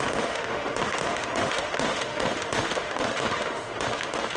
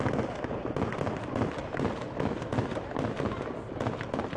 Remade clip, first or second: first